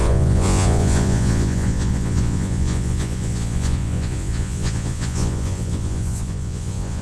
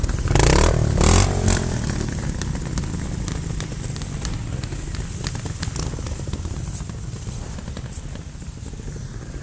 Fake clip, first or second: first